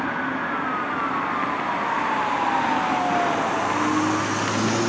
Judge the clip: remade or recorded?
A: recorded